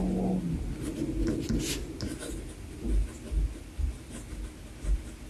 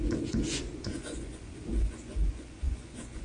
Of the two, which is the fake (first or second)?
second